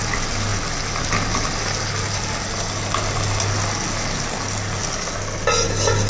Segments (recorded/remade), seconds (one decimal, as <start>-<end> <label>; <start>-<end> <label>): 0.0-6.1 recorded